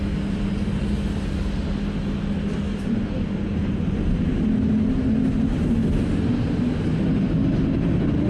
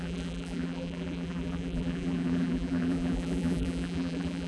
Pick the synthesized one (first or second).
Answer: second